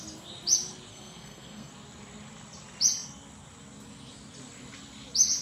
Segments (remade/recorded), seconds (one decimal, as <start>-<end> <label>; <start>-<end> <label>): 0.0-0.9 recorded; 0.9-1.7 remade; 1.7-5.4 recorded